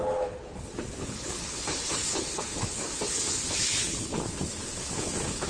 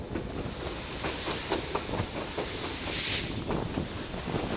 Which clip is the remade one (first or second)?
first